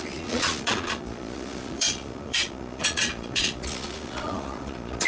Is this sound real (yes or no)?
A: no